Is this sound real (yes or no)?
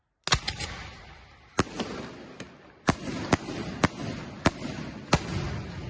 yes